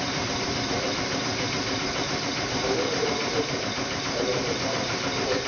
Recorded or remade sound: remade